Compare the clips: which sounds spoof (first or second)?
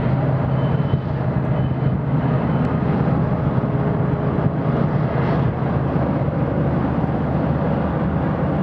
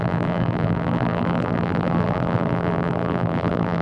second